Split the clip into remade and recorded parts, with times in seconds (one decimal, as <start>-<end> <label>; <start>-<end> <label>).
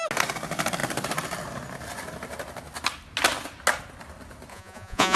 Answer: 0.0-4.5 recorded; 4.5-5.2 remade